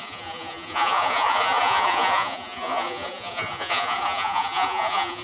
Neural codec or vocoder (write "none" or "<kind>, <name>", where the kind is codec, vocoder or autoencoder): vocoder, Vocos